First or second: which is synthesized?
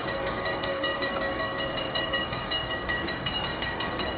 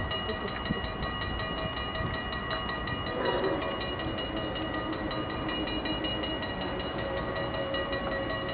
first